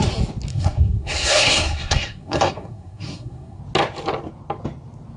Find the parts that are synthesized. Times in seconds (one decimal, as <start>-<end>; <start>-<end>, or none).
0.5-3.6

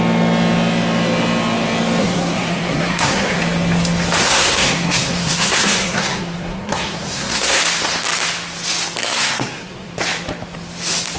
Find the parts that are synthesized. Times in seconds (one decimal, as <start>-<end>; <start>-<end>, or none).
2.0-3.4; 4.2-7.6; 9.0-9.9